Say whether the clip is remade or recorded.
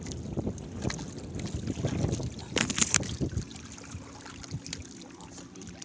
recorded